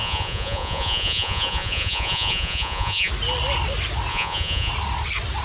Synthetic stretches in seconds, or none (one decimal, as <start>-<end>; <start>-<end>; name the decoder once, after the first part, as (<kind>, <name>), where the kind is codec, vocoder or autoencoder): 0.0-3.1 (vocoder, Vocos); 4.1-4.7